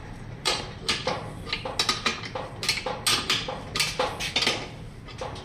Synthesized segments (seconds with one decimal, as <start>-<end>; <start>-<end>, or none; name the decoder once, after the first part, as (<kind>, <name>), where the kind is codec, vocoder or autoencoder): 0.0-0.6 (vocoder, BigVGAN v2)